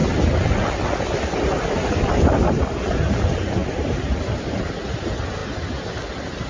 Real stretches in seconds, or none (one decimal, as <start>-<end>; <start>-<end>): 0.0-3.6; 4.4-6.5